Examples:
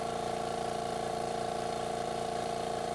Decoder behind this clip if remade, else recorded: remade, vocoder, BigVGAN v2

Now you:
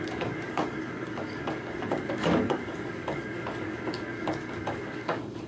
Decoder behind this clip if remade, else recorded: remade, codec, DAC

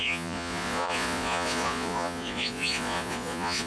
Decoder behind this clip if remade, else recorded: remade, vocoder, Vocos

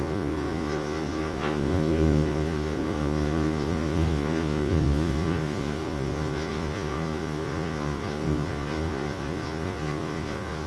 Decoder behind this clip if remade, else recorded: remade, vocoder, Vocos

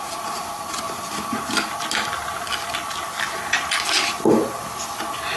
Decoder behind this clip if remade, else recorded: recorded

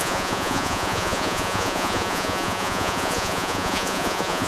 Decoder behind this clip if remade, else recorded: remade, vocoder, Vocos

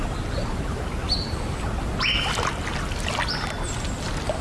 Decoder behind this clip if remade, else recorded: recorded